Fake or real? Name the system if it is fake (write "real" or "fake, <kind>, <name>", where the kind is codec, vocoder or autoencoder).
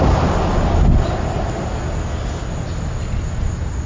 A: real